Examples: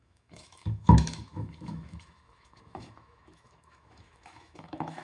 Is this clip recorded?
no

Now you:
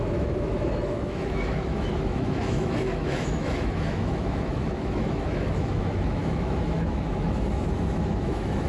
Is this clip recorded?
no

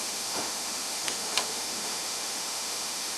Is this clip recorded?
no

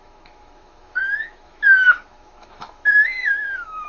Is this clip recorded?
no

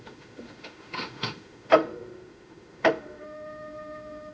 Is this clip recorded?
no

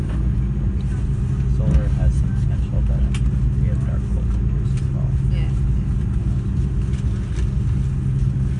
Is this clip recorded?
yes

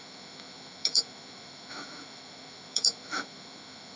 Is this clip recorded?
no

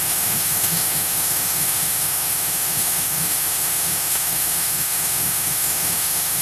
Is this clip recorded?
no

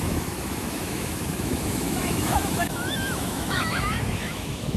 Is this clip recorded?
no